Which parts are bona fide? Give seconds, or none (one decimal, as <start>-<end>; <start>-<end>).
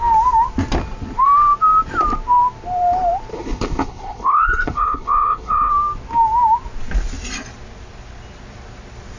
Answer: 0.0-3.3; 5.7-9.2